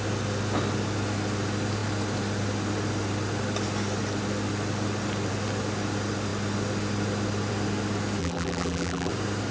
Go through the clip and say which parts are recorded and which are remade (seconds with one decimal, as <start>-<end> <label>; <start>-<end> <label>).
0.0-8.2 recorded; 8.2-9.1 remade; 9.1-9.5 recorded

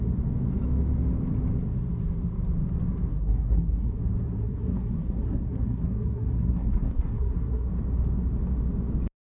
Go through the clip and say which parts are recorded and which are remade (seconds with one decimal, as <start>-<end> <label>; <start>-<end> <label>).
0.0-3.1 recorded; 3.1-4.0 remade; 4.0-4.4 recorded; 4.4-7.7 remade; 7.7-9.3 recorded

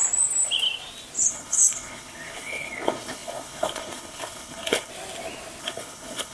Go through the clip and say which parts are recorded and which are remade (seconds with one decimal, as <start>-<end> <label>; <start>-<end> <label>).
0.0-1.3 recorded; 1.3-4.9 remade; 4.9-5.6 recorded; 5.6-6.3 remade